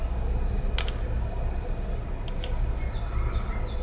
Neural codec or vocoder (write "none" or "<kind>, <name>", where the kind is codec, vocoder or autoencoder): none